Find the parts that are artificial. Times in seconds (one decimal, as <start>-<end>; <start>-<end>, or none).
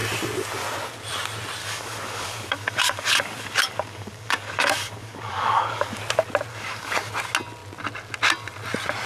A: 1.6-6.0; 6.5-7.1